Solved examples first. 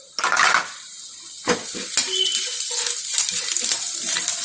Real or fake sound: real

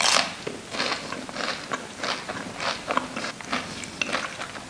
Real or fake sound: real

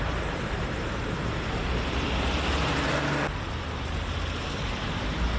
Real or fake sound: fake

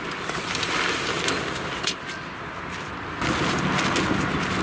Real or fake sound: real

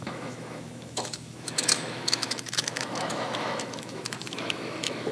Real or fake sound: fake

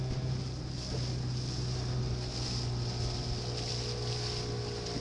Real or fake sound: real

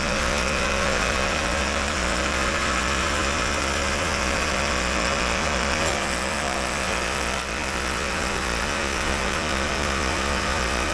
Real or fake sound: fake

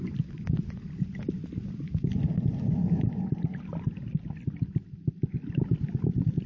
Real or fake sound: real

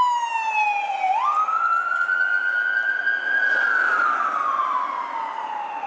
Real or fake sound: real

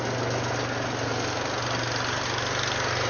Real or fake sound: real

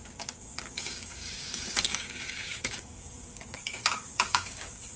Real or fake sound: fake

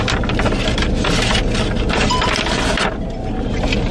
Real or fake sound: real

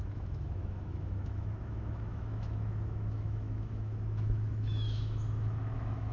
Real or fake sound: fake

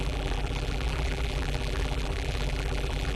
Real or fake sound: fake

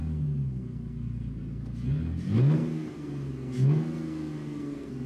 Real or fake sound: fake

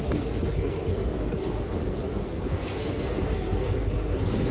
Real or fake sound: fake